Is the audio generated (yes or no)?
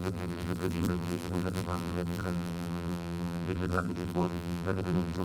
yes